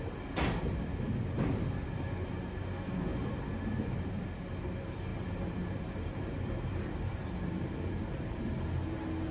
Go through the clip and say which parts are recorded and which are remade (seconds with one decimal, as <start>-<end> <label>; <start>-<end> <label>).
0.0-5.1 recorded; 5.1-8.4 remade; 8.4-9.3 recorded